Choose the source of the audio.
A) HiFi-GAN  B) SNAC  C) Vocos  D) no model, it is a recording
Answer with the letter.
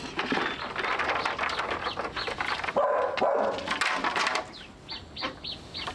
D